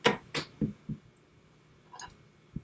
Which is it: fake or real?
real